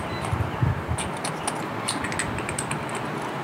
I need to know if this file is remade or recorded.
recorded